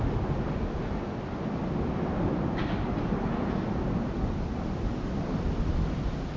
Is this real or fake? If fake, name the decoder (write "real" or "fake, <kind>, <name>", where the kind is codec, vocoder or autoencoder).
real